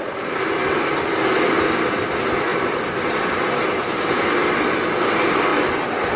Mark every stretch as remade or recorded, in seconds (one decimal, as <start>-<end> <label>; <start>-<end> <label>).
0.0-6.2 recorded